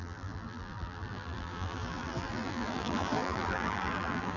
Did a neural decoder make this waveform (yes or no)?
yes